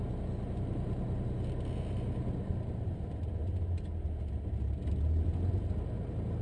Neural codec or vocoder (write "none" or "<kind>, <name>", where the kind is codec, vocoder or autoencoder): none